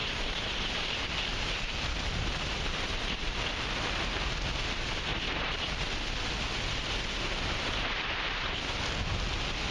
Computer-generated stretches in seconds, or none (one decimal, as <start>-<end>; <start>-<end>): 0.0-3.6; 5.1-6.3; 6.7-8.6